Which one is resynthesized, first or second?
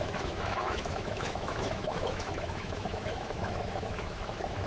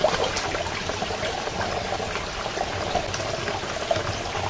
first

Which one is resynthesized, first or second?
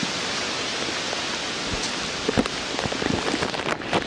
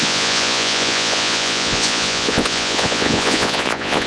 second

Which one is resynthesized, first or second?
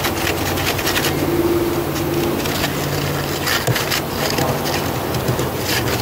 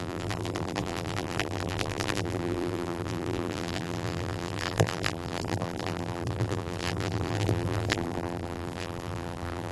second